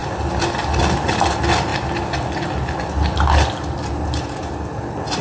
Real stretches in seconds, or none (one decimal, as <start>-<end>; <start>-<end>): 0.0-5.2